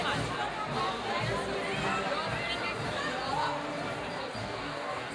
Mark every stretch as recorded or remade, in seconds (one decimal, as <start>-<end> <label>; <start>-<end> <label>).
0.0-4.4 recorded; 4.4-5.1 remade